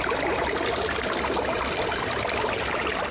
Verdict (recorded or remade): recorded